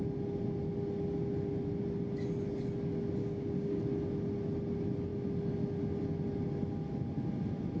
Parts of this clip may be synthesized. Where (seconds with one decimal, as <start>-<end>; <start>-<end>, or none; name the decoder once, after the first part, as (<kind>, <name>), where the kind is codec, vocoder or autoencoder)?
3.2-3.8 (codec, DAC)